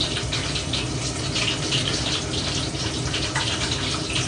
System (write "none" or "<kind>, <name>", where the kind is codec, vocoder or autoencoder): none